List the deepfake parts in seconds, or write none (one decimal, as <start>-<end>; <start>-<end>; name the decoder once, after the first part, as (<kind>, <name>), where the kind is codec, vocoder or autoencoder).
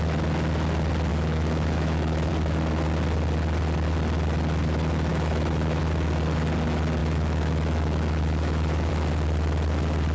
1.1-2.3 (autoencoder, DAC-VAE); 5.1-5.8; 7.0-8.9